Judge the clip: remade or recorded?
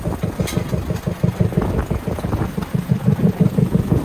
recorded